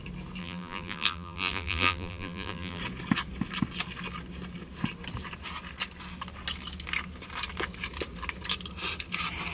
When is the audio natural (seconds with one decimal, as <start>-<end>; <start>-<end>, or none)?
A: 0.0-0.4; 2.8-9.5